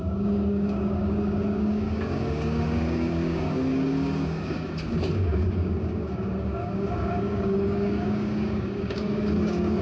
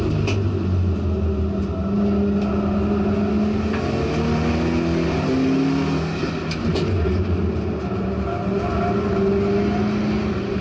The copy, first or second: first